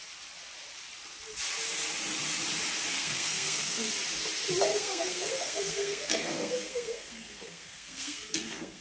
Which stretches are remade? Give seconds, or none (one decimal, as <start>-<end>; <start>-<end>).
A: 2.9-3.9; 4.7-8.8